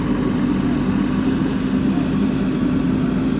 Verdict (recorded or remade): recorded